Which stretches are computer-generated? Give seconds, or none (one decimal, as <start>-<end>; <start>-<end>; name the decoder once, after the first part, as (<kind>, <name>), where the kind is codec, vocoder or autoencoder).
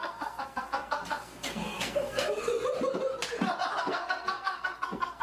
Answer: 0.0-2.5 (codec, SNAC); 3.8-5.2